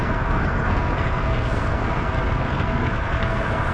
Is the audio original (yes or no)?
no